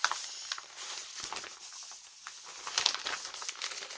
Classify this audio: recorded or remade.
recorded